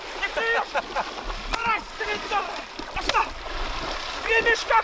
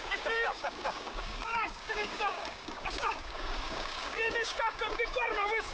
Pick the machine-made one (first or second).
second